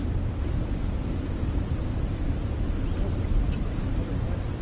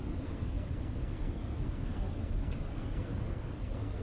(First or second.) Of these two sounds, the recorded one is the first